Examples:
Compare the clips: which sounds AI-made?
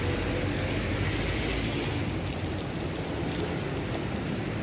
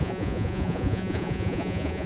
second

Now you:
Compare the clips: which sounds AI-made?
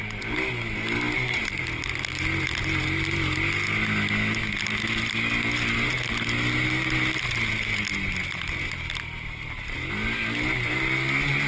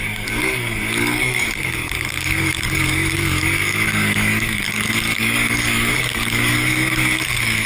second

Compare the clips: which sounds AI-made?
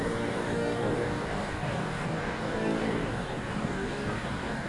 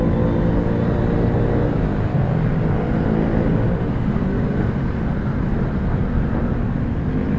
first